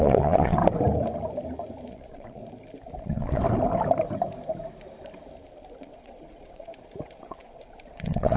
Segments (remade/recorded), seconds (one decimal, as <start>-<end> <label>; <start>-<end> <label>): 0.0-0.6 remade; 0.6-1.9 recorded; 1.9-2.4 remade; 2.4-3.0 recorded; 3.0-3.4 remade; 3.4-5.8 recorded; 5.8-6.7 remade; 6.7-7.2 recorded; 7.2-8.4 remade

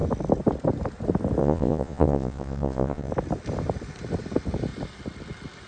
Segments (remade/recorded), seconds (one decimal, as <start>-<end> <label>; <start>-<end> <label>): 0.0-1.4 recorded; 1.4-3.1 remade; 3.1-5.7 recorded

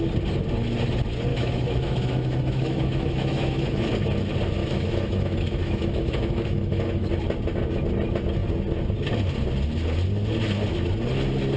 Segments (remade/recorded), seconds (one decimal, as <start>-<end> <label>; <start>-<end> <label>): 0.0-1.3 recorded; 1.3-3.9 remade; 3.9-4.6 recorded; 4.6-7.1 remade; 7.1-11.6 recorded

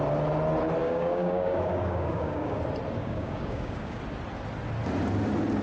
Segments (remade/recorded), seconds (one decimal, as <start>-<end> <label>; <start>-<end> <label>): 0.0-0.8 recorded; 0.8-2.6 remade; 2.6-3.0 recorded; 3.0-4.0 remade; 4.0-5.6 recorded

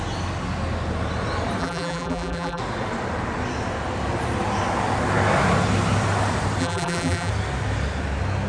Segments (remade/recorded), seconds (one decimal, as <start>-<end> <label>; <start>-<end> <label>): 0.0-1.6 recorded; 1.6-2.6 remade; 2.6-6.6 recorded; 6.6-7.3 remade; 7.3-8.5 recorded

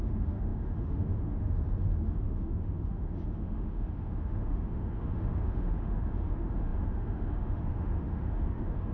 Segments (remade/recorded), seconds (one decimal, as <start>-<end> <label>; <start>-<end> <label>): 0.0-8.9 remade

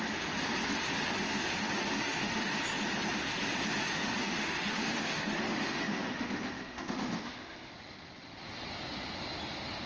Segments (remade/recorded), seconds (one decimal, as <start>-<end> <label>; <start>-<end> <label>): 0.0-1.3 recorded; 1.3-2.5 remade; 2.5-4.2 recorded; 4.2-7.7 remade; 7.7-9.9 recorded

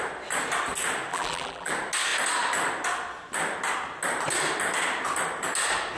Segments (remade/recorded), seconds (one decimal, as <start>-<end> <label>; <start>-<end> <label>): 0.0-1.1 recorded; 1.1-1.7 remade; 1.7-6.0 recorded